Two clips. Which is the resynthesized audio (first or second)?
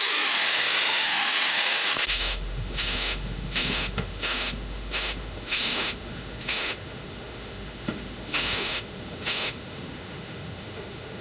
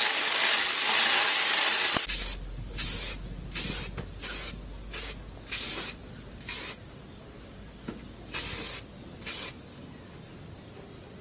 first